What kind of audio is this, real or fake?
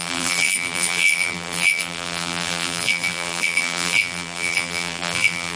fake